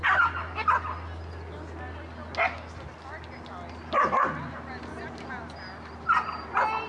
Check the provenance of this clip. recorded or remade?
recorded